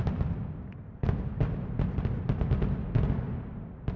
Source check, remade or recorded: recorded